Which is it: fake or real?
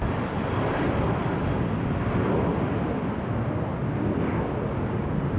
real